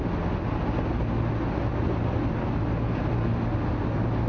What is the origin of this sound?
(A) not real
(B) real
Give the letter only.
B